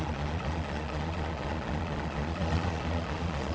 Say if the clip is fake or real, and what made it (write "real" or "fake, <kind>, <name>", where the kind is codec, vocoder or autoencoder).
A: fake, vocoder, Vocos